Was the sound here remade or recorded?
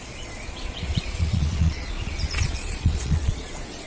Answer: remade